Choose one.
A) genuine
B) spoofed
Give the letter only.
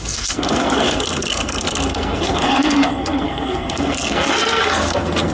B